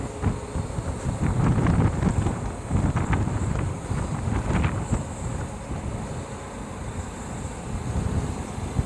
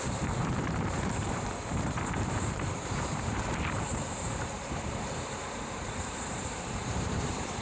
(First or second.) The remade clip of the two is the second